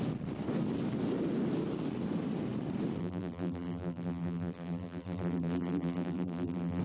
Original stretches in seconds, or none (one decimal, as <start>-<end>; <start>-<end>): 0.0-3.0